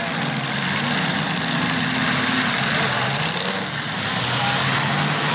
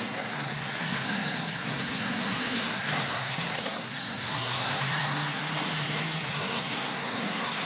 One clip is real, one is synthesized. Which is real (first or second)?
first